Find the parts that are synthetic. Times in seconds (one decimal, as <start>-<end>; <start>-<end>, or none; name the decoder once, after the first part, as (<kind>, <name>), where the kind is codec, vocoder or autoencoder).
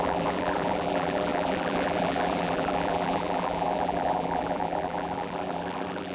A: 0.0-6.1 (vocoder, BigVGAN v2)